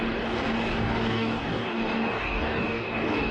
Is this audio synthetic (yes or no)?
yes